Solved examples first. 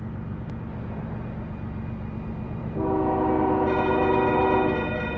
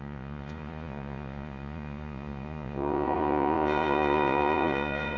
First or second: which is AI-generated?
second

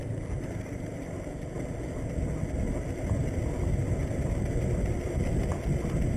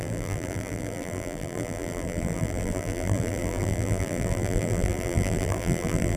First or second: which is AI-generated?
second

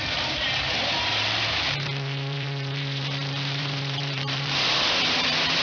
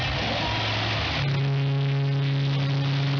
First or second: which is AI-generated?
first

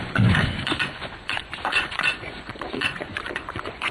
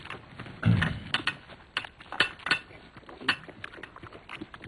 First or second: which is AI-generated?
first